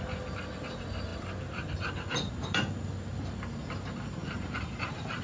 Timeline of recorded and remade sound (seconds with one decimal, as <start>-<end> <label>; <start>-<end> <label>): 0.0-4.2 recorded; 4.2-5.2 remade